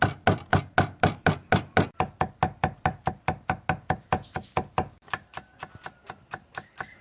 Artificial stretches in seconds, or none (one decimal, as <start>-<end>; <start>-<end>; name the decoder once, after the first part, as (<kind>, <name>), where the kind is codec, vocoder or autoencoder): none